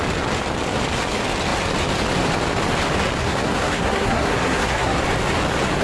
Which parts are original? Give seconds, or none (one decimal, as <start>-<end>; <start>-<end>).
0.0-3.2; 5.0-5.8